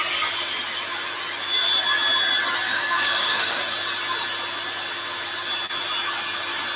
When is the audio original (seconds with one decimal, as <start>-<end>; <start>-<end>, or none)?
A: 0.0-2.7; 3.6-6.8